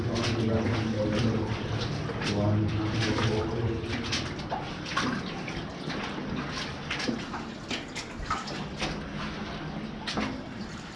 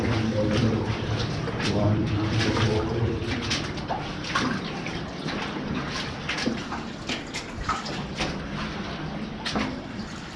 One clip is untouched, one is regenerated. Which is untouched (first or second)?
first